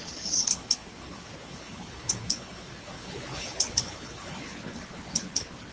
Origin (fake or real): fake